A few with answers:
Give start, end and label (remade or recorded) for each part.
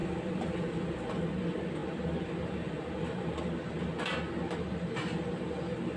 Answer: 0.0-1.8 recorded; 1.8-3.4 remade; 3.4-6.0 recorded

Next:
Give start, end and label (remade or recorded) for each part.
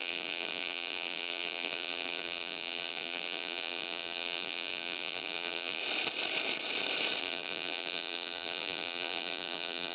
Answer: 0.0-5.8 remade; 5.8-7.2 recorded; 7.2-9.9 remade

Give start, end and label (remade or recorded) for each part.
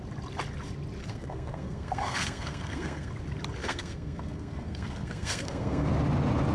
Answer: 0.0-1.0 recorded; 1.0-3.1 remade; 3.1-3.6 recorded; 3.6-5.9 remade; 5.9-6.5 recorded